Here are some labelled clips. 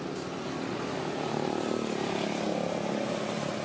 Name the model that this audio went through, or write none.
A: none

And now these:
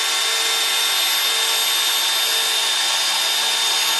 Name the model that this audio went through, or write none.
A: none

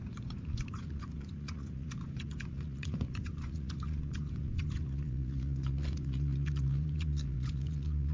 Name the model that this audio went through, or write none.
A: vocoder, Vocos